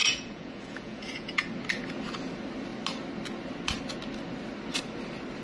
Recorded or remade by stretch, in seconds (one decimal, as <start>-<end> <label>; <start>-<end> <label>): 0.0-1.5 remade; 1.5-5.4 recorded